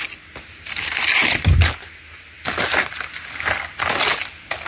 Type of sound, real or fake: real